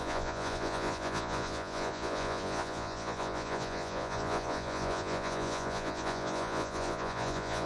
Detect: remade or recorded remade